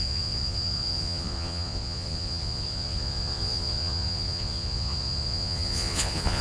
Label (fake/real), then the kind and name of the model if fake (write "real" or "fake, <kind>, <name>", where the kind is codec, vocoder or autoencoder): fake, vocoder, Vocos